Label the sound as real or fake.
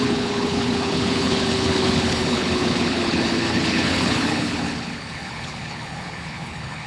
fake